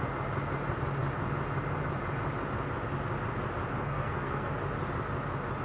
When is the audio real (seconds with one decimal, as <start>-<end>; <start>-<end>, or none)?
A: 0.0-3.8; 4.5-5.6